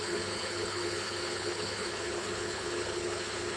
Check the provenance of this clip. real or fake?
fake